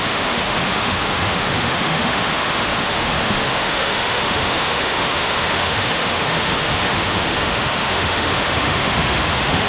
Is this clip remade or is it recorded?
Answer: remade